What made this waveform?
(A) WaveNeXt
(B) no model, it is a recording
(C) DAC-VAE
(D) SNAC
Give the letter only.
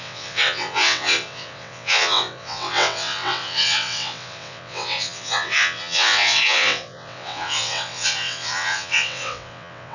A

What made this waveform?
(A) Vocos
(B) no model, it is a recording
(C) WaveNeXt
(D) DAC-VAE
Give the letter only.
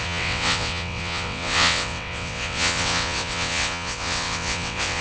C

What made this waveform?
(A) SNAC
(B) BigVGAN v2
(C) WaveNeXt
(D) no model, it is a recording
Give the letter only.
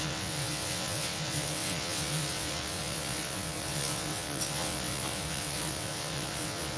C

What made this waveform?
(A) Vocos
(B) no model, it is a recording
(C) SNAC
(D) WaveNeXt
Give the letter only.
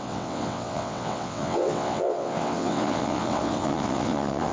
D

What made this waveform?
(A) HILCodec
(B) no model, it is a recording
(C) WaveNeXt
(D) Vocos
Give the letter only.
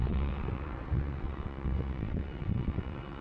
C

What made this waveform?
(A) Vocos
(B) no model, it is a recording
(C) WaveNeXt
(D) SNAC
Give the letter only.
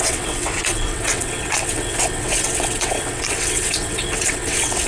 C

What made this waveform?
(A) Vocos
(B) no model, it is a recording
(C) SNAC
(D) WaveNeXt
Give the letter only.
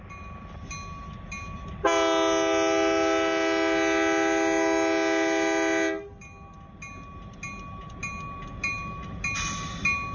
B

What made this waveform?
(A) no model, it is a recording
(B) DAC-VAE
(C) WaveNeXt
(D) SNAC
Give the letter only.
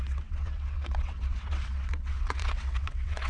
C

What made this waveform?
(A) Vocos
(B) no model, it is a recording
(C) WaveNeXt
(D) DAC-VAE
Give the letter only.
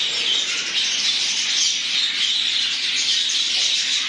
B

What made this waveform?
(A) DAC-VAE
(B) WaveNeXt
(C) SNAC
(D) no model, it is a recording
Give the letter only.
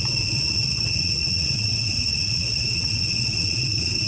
B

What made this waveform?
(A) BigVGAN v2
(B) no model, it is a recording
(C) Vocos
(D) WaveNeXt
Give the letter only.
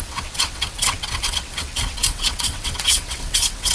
D